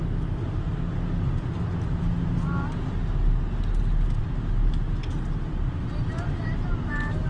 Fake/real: real